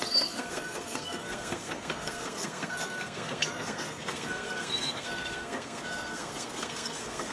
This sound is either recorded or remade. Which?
remade